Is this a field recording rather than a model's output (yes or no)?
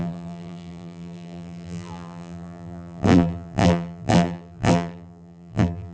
no